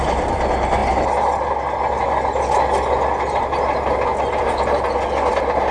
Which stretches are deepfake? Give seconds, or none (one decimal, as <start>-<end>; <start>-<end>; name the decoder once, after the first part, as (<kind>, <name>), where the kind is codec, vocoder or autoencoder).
none